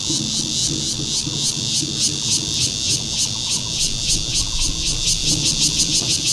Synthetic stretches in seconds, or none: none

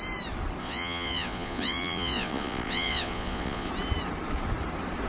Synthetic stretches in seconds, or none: 0.6-3.7 (vocoder, Vocos)